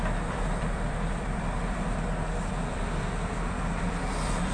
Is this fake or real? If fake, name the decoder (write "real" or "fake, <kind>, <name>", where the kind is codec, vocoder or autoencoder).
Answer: fake, vocoder, BigVGAN v2